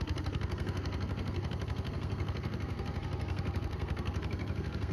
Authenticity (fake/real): fake